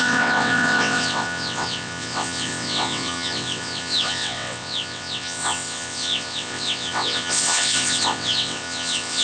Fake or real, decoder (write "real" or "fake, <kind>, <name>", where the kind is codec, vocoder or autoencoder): fake, vocoder, WaveNeXt